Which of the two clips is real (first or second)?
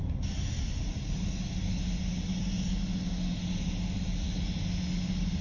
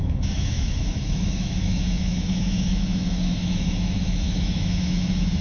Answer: first